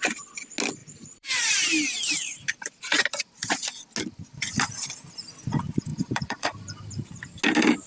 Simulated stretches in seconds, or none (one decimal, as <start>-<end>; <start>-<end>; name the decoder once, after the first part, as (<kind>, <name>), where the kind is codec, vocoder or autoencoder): 0.8-3.6 (vocoder, BigVGAN v2); 5.9-7.2